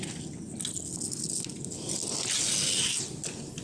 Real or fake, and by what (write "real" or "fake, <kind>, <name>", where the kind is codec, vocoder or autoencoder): real